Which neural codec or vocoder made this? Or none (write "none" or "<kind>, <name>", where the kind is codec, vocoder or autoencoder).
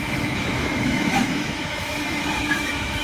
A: autoencoder, DAC-VAE